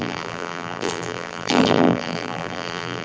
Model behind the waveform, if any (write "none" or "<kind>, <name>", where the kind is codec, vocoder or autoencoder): vocoder, BigVGAN v2